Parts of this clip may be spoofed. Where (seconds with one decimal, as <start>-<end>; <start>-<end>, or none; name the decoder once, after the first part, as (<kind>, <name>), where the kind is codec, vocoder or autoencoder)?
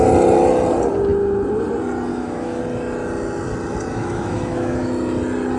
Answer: 2.1-2.6 (autoencoder, DAC-VAE); 3.9-4.9